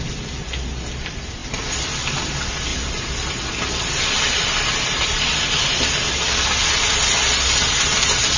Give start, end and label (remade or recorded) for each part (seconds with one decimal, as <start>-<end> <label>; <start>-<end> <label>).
0.0-8.4 recorded